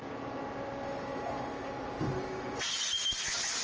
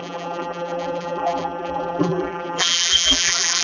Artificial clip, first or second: second